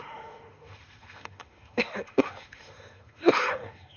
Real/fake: fake